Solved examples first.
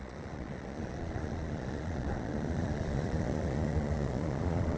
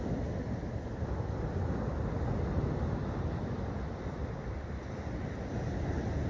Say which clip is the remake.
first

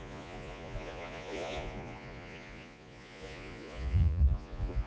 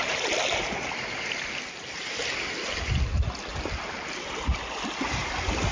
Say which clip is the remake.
first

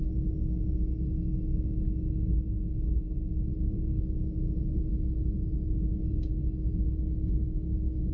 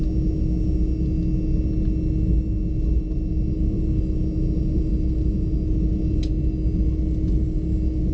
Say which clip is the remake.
first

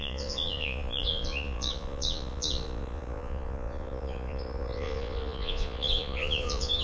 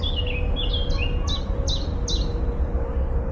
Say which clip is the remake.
first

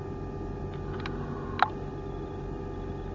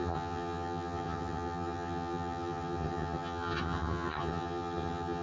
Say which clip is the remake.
second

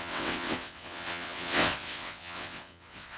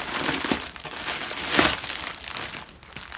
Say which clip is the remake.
first